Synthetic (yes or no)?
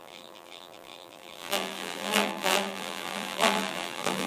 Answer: yes